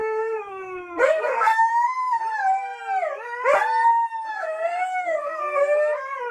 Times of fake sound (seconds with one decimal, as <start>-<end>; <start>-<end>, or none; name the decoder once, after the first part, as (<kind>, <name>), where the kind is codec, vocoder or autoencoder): 0.0-2.2 (codec, SNAC); 4.3-5.4